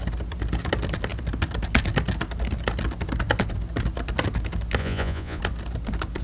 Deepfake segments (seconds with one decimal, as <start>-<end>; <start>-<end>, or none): 4.8-5.4